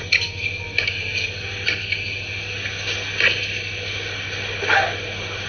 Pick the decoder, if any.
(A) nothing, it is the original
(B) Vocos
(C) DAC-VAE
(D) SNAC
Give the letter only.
A